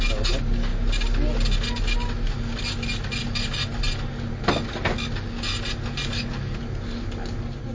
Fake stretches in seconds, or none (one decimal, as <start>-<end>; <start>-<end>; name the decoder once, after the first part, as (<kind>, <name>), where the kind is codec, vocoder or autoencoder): none